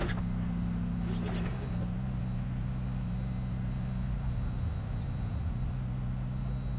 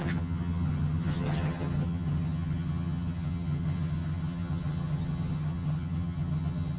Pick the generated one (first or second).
second